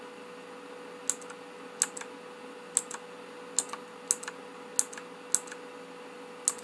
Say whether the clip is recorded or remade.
recorded